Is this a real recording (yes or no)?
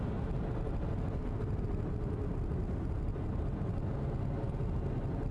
yes